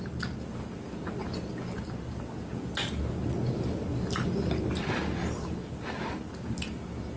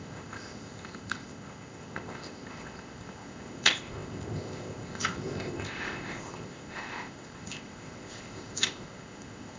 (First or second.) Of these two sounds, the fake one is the second